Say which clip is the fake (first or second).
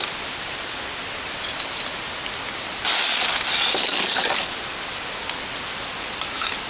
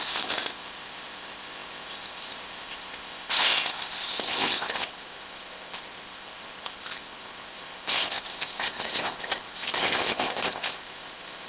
second